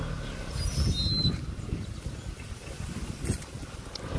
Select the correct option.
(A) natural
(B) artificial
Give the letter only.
A